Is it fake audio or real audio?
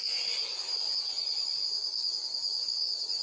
real